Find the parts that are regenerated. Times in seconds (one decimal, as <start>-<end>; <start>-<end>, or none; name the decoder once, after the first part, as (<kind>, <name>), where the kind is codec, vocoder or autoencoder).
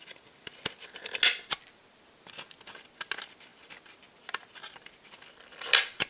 none